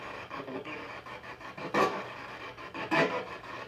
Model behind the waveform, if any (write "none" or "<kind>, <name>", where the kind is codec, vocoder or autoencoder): codec, DAC